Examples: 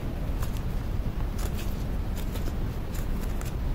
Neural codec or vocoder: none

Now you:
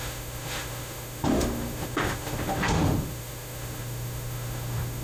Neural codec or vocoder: autoencoder, DAC-VAE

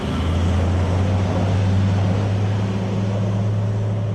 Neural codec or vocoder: none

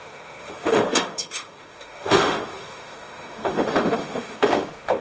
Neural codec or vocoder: autoencoder, DAC-VAE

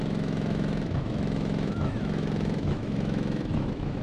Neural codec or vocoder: autoencoder, DAC-VAE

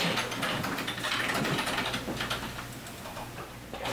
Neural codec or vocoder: none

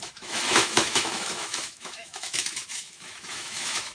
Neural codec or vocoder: autoencoder, DAC-VAE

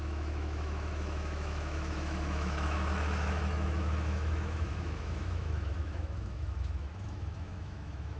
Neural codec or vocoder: autoencoder, DAC-VAE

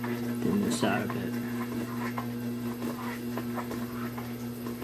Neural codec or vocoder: none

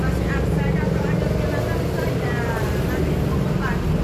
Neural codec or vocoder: none